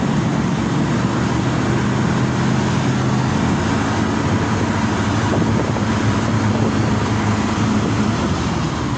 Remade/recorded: recorded